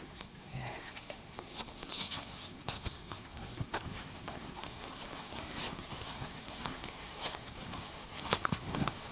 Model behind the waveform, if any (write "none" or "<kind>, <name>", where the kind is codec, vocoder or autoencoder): codec, SNAC